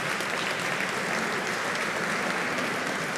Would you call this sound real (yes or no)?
yes